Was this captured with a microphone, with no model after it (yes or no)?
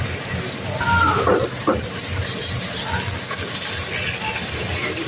yes